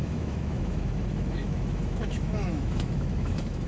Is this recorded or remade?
remade